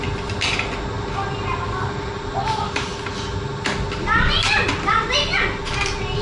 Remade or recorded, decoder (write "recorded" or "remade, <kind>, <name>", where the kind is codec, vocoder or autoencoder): recorded